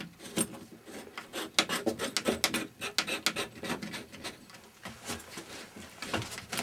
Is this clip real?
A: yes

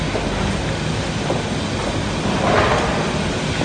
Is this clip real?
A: yes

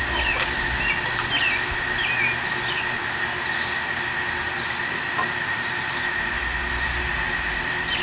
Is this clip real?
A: yes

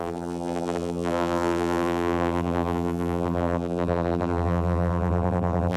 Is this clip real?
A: no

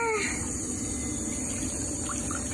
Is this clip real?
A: yes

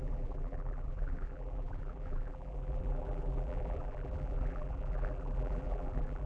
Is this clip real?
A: no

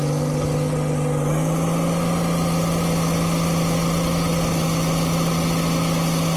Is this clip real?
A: yes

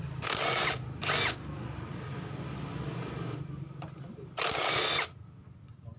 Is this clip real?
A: yes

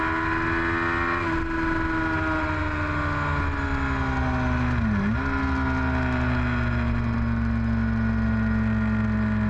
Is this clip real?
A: yes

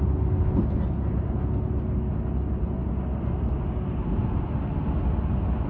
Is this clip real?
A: yes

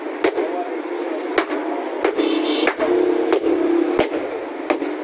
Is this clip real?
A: yes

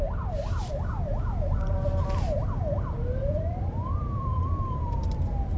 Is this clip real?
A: no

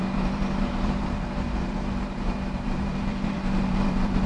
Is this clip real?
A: no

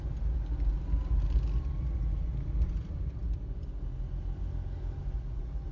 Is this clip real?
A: yes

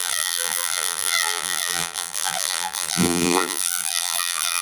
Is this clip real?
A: no